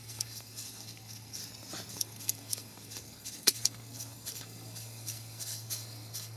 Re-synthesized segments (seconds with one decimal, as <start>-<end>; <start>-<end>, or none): 0.0-1.4; 1.9-6.4